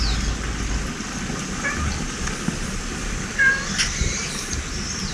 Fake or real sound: real